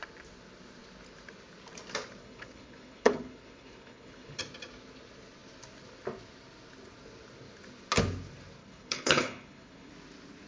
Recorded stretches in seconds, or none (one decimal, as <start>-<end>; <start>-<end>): 0.0-2.2; 4.4-8.6; 9.9-10.5